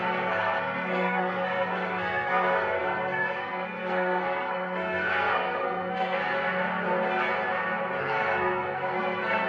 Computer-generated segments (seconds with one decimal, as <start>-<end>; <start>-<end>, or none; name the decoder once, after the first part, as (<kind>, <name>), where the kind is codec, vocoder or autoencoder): 0.0-6.2 (codec, SNAC); 8.0-9.5